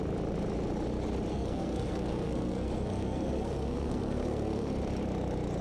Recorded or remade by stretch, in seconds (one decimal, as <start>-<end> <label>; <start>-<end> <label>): 0.0-1.3 recorded; 1.3-4.7 remade; 4.7-5.6 recorded